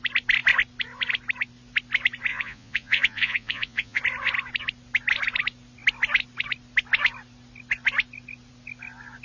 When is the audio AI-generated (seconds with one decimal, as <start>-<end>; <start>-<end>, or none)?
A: 2.3-4.0